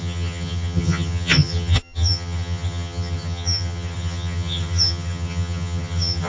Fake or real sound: fake